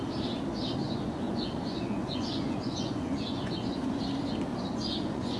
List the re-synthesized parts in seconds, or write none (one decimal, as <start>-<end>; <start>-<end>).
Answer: 0.8-4.0; 4.5-5.4